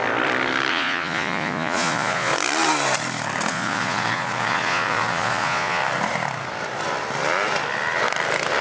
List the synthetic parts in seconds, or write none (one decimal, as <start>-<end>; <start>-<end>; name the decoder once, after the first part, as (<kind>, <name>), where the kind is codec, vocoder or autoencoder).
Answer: 0.7-2.3 (vocoder, Vocos); 3.5-5.8